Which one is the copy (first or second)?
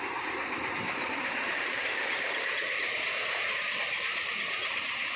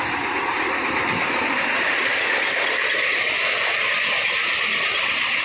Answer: first